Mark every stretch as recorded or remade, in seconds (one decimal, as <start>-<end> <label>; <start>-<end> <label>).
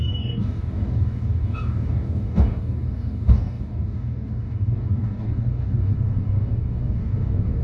0.0-7.6 remade